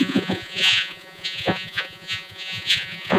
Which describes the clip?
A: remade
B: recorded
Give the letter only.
A